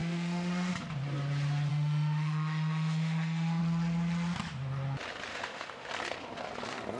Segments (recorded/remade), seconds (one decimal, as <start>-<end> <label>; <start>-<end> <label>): 0.0-0.7 remade; 0.7-1.7 recorded; 1.7-3.6 remade; 3.6-5.3 recorded; 5.3-5.9 remade; 5.9-7.0 recorded